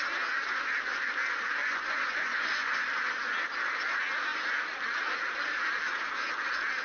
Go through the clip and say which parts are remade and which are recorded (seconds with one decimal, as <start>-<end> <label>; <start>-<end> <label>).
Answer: 0.0-1.6 recorded; 1.6-2.8 remade; 2.8-6.8 recorded